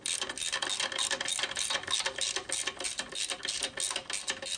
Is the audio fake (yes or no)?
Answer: no